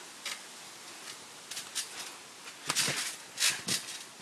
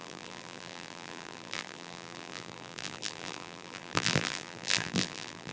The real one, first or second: first